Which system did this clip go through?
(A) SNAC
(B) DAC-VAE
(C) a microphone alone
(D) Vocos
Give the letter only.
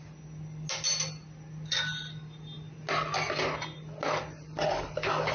C